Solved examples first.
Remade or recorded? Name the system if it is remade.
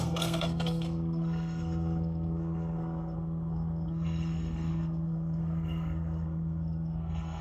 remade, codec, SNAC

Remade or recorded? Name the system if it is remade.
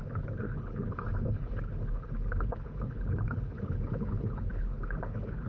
remade, codec, HILCodec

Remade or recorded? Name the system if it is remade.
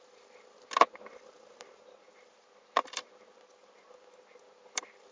recorded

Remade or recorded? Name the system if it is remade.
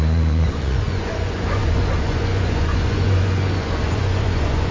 remade, vocoder, Vocos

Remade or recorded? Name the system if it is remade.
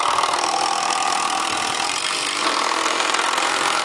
remade, vocoder, BigVGAN v2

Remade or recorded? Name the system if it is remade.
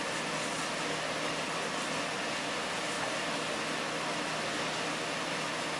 recorded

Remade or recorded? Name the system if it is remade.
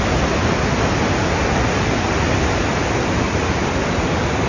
recorded